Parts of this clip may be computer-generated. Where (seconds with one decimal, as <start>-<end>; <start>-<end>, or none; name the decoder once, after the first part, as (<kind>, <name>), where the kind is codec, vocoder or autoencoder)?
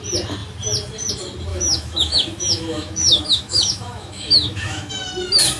1.5-4.9 (autoencoder, DAC-VAE)